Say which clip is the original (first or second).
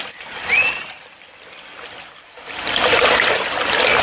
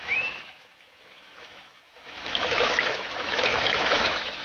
first